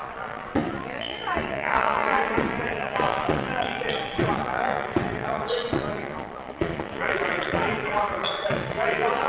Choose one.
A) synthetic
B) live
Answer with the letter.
A